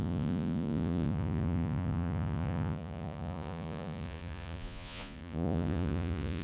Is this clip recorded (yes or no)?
no